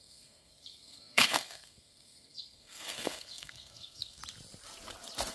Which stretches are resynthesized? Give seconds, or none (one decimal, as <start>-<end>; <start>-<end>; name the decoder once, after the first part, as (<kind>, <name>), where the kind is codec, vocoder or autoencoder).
0.0-4.2 (codec, SNAC)